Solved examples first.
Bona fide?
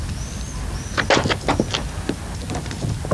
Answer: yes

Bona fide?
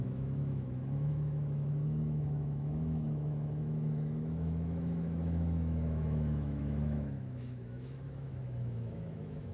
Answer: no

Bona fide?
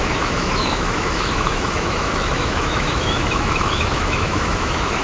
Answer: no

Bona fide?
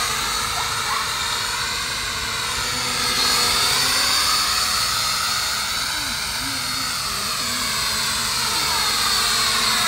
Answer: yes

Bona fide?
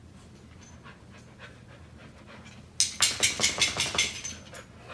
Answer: yes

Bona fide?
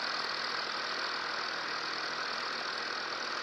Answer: yes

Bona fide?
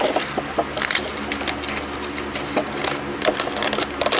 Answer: yes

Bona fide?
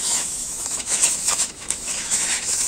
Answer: no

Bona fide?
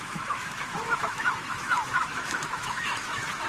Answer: no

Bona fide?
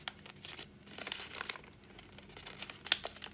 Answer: yes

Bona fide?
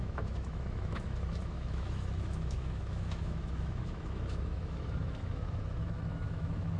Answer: no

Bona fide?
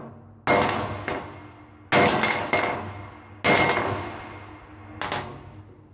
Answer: yes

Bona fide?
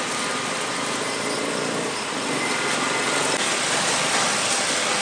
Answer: yes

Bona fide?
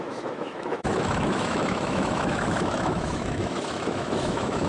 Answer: no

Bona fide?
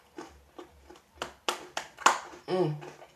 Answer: yes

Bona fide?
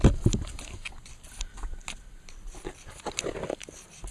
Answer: yes